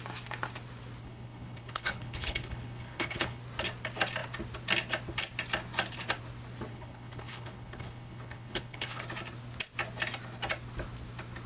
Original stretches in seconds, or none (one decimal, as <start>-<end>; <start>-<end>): 0.0-1.0; 3.4-6.7; 9.0-11.5